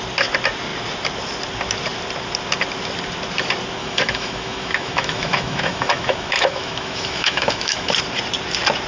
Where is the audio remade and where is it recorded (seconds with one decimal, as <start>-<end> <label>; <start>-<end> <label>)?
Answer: 0.0-3.8 recorded; 3.8-7.9 remade; 7.9-8.9 recorded